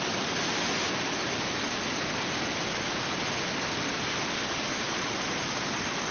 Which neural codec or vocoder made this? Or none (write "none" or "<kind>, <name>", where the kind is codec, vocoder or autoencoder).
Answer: none